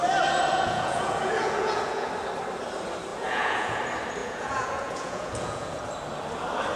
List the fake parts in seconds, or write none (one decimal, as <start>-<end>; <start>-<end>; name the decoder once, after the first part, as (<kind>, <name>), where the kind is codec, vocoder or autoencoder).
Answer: 0.5-2.1 (vocoder, Vocos); 3.1-3.8; 4.2-5.9